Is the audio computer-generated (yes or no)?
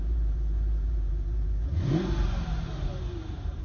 yes